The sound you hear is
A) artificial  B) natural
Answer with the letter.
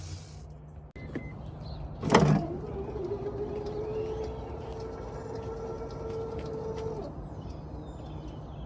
B